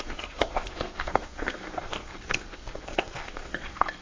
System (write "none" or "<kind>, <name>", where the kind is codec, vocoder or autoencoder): codec, SNAC